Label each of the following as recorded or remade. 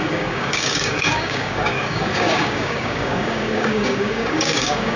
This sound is remade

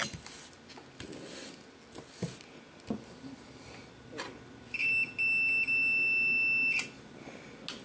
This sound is recorded